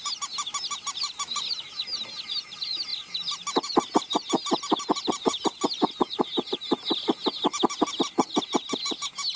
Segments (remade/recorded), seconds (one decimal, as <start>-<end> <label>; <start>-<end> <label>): 0.0-9.4 recorded